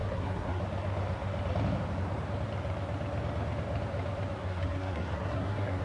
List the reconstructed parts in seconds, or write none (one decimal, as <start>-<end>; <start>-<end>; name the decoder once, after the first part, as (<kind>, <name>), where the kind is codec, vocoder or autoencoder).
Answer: 0.0-0.6 (codec, SNAC); 4.4-5.8